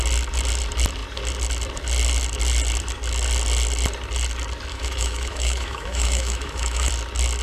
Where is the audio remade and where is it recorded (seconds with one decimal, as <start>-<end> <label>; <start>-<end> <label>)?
0.0-4.7 recorded; 4.7-6.9 remade; 6.9-7.4 recorded